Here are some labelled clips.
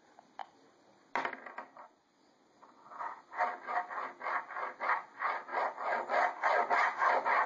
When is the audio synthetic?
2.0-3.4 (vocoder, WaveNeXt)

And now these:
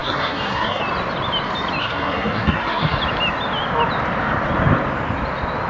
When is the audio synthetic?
0.0-0.8 (codec, SNAC); 1.8-3.0

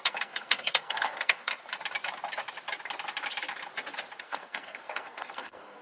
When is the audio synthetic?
0.0-1.5 (codec, SNAC); 4.2-5.8